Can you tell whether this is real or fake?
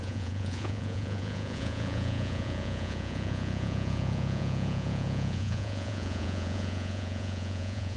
fake